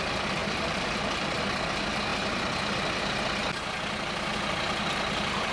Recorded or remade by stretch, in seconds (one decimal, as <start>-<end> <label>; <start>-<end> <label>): 0.0-0.4 recorded; 0.4-1.4 remade; 1.4-5.5 recorded

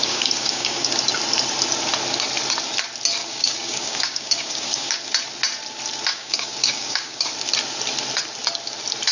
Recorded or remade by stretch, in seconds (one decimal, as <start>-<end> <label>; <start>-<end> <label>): 0.0-0.9 remade; 0.9-3.2 recorded; 3.2-5.0 remade; 5.0-6.1 recorded; 6.1-7.3 remade; 7.3-9.1 recorded

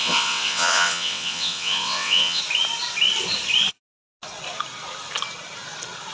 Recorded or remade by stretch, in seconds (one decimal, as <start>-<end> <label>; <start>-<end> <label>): 0.0-2.4 remade; 2.4-6.1 recorded

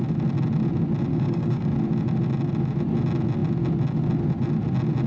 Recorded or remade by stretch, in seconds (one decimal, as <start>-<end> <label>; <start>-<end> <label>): 0.0-1.1 recorded; 1.1-1.7 remade; 1.7-5.1 recorded

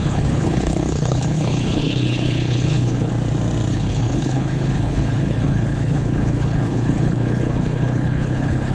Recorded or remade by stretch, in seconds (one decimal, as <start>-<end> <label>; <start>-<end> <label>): 0.0-3.1 remade; 3.1-3.7 recorded; 3.7-8.7 remade

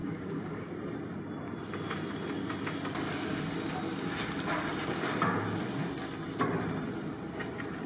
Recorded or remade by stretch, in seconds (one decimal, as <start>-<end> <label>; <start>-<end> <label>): 0.0-0.7 remade; 0.7-7.9 recorded

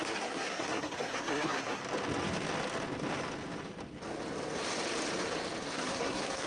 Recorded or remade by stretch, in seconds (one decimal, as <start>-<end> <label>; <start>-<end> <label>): 0.0-1.8 remade; 1.8-5.7 recorded; 5.7-6.5 remade